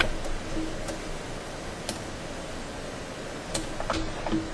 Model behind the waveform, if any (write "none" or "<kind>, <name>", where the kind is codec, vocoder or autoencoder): none